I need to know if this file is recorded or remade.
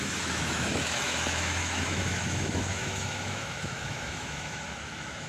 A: remade